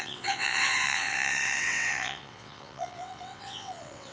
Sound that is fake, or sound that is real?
fake